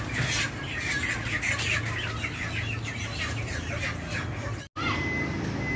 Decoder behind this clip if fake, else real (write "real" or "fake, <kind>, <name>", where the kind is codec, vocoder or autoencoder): real